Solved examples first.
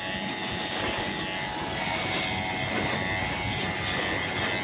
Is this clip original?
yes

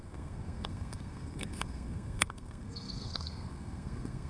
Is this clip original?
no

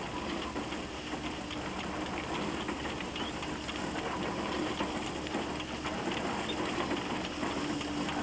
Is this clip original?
yes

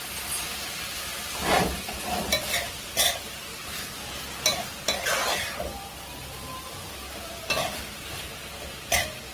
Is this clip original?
yes